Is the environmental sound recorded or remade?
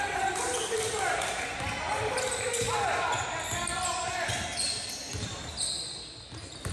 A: recorded